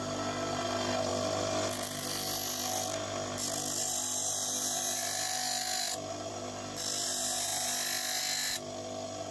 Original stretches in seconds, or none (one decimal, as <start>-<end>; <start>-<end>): 0.0-9.3